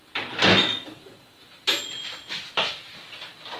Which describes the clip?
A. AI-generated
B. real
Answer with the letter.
B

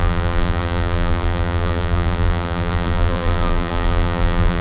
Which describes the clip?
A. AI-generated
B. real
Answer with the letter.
A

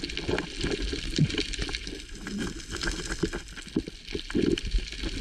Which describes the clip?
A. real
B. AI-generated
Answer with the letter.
A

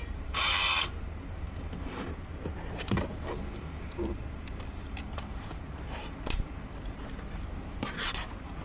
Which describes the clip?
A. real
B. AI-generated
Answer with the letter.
B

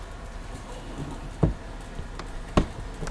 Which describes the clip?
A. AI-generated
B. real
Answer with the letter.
B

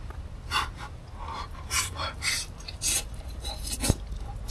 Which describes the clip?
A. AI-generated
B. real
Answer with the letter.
A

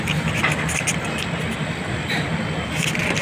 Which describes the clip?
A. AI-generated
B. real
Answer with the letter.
B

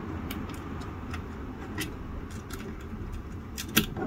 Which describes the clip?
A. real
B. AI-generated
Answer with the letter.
A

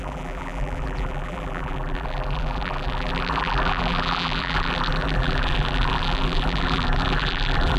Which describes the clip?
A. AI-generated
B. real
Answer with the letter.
A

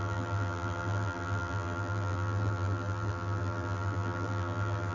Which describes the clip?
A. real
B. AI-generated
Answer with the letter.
B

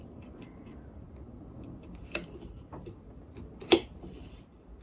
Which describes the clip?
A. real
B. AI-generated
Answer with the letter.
B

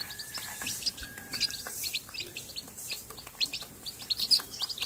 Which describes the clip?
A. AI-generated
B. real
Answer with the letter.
A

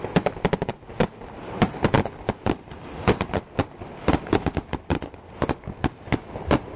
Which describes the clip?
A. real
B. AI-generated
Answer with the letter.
A